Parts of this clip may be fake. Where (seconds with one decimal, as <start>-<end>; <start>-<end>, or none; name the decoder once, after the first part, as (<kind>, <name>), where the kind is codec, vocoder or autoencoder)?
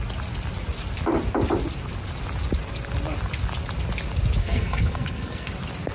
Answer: 4.4-5.5 (codec, SNAC)